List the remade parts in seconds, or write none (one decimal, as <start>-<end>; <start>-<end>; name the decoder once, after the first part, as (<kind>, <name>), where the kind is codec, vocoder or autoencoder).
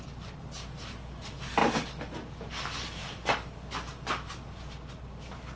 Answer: none